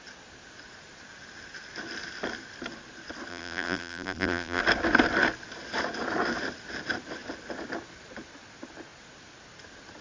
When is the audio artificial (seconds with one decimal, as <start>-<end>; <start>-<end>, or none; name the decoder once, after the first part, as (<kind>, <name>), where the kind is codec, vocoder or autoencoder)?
3.3-4.6 (vocoder, BigVGAN v2)